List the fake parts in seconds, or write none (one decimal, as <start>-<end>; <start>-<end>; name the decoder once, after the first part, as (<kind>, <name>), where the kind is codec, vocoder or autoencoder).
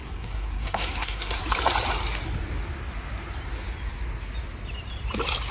0.0-1.4 (codec, SNAC)